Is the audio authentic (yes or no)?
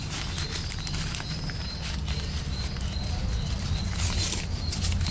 yes